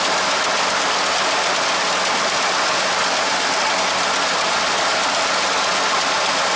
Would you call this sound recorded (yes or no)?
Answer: yes